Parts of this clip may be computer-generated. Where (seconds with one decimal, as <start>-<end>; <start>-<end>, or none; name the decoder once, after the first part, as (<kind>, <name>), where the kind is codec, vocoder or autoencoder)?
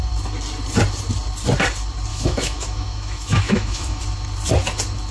2.1-4.0 (autoencoder, DAC-VAE)